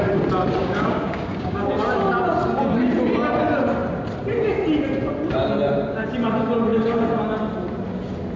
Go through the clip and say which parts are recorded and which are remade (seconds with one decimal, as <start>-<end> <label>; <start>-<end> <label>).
0.0-0.6 recorded; 0.6-1.7 remade; 1.7-8.4 recorded